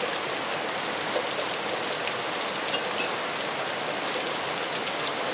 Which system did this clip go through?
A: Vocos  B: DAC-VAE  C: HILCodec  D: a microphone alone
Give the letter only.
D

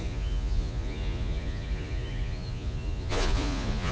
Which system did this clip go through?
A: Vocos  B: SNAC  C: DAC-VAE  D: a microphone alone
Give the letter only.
A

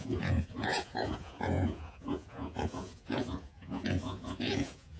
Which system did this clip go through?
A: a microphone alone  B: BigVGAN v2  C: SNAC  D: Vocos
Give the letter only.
D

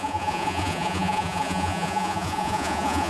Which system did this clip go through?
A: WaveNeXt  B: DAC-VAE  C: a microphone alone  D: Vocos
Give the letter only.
D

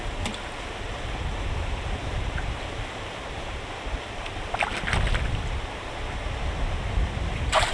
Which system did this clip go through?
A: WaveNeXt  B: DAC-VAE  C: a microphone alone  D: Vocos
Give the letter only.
C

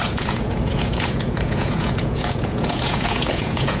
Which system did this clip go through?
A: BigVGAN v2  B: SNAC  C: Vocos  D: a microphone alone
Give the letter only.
C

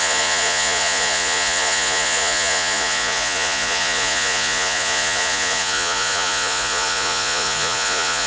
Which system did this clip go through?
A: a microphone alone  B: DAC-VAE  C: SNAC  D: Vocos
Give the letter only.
D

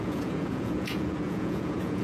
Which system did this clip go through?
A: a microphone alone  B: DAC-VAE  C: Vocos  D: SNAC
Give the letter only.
C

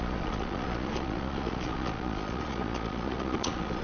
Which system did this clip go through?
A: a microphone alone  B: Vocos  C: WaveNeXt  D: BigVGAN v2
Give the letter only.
B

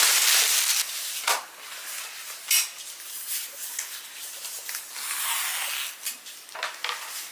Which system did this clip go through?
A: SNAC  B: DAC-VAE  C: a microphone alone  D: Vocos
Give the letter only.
C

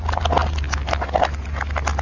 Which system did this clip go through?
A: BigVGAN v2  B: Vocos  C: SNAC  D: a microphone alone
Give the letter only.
D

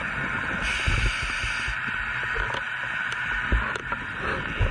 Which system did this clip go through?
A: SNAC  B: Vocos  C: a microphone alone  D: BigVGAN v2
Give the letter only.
C